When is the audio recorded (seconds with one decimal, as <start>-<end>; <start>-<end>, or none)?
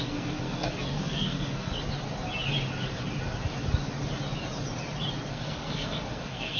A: 1.7-5.3